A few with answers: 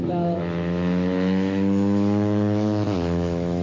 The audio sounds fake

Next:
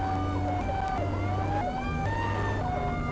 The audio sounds real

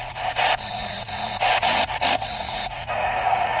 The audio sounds fake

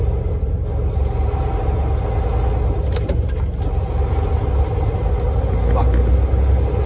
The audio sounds real